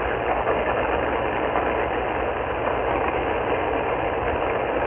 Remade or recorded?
recorded